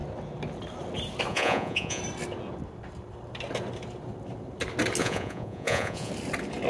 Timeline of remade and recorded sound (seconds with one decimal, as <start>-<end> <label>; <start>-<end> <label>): 0.0-1.3 recorded; 1.3-2.0 remade; 2.0-5.0 recorded; 5.0-6.1 remade; 6.1-6.7 recorded